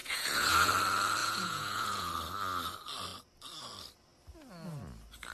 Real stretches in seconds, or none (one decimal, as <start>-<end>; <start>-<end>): 0.7-1.2; 2.1-5.3